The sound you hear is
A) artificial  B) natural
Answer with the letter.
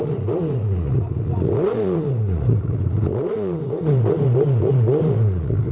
A